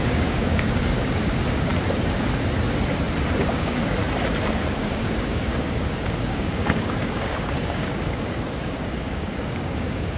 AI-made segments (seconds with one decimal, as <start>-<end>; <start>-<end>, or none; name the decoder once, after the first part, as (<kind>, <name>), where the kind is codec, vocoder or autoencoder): 0.0-1.7 (codec, DAC); 3.4-4.0; 4.7-10.2